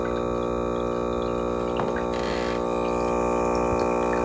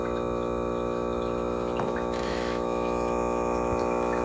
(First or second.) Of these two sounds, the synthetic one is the second